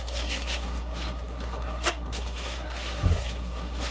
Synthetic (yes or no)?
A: yes